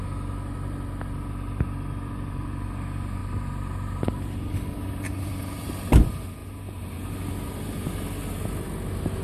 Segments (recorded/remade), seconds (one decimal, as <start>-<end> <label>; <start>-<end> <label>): 0.0-3.2 recorded; 3.2-5.7 remade; 5.7-6.4 recorded; 6.4-7.0 remade; 7.0-9.2 recorded